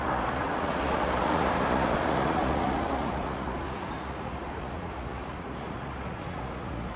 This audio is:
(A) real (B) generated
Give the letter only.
B